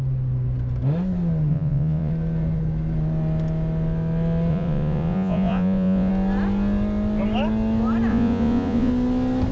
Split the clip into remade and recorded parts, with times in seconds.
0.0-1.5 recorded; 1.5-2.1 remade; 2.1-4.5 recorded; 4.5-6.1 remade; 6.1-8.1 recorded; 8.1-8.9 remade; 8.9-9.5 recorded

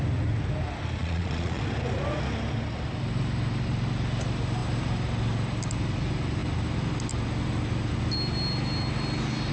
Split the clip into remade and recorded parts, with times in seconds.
0.0-1.0 recorded; 1.0-1.6 remade; 1.6-9.5 recorded